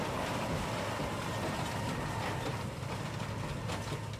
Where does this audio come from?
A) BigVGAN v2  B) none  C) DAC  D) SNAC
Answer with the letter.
B